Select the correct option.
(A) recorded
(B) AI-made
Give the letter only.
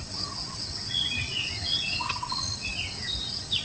B